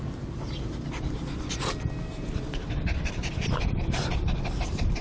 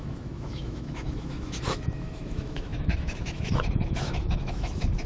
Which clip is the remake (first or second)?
second